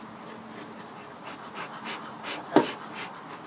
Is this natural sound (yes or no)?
yes